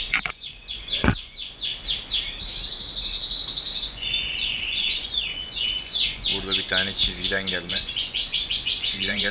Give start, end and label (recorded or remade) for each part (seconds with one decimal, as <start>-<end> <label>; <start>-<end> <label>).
0.0-1.7 remade; 1.7-3.8 recorded; 3.8-6.3 remade; 6.3-7.7 recorded; 7.7-9.3 remade